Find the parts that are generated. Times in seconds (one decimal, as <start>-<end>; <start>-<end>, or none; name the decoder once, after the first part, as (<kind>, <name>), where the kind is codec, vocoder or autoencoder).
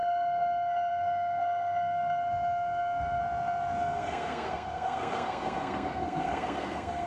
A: 0.0-3.2 (codec, SNAC); 3.8-7.1